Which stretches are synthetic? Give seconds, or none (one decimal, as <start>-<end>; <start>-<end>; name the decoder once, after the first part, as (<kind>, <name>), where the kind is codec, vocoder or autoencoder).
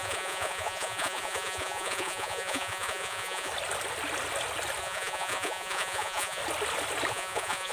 0.0-3.5 (vocoder, Vocos); 4.8-6.4; 7.1-7.7